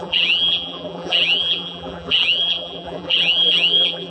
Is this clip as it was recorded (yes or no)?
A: no